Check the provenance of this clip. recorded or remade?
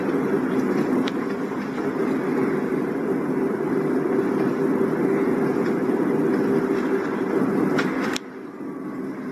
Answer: recorded